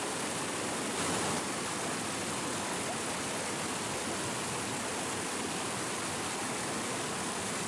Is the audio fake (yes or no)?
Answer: no